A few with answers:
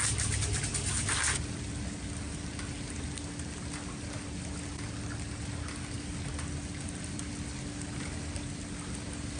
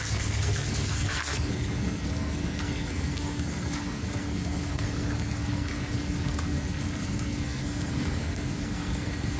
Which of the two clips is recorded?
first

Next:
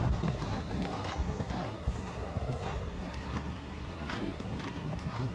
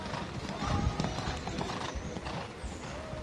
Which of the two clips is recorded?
second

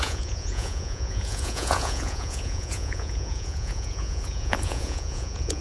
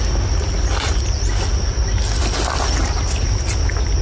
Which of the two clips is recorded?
second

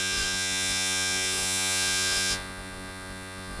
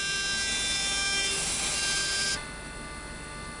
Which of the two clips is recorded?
second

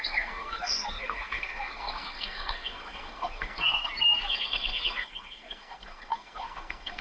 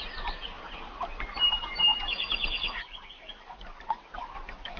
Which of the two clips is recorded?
second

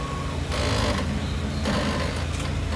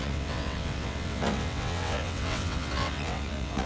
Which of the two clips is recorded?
first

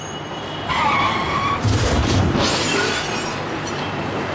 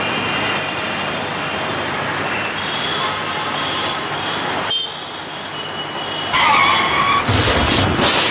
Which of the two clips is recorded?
second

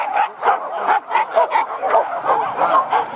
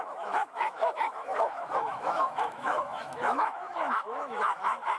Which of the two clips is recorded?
first